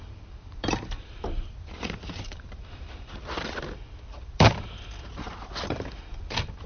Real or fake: fake